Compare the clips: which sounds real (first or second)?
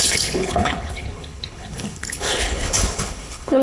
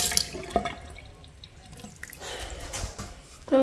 second